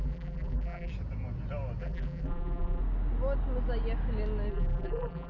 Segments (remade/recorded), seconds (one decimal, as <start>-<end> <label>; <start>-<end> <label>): 0.0-0.9 remade; 0.9-1.8 recorded; 1.8-2.8 remade; 2.8-4.5 recorded; 4.5-5.3 remade